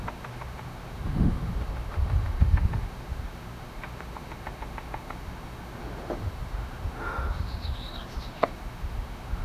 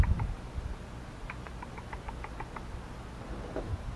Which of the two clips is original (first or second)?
second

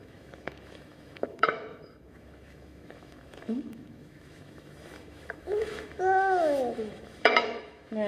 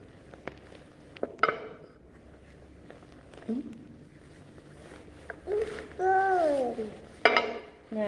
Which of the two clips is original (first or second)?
second